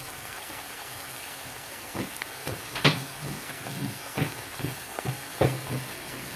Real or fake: fake